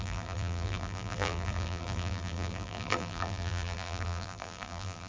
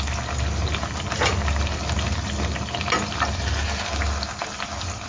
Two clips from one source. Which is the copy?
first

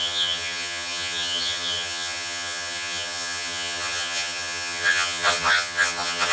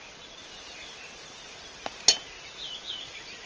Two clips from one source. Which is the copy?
first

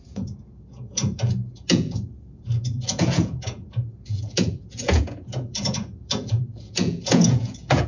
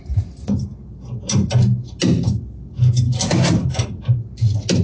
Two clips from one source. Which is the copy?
first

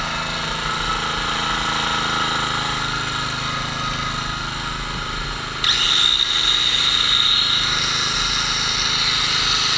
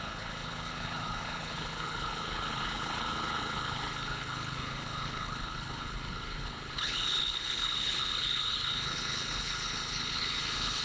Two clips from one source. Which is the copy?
second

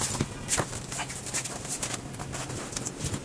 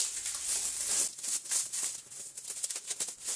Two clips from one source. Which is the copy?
first